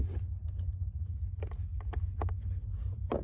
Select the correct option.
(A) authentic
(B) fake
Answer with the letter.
A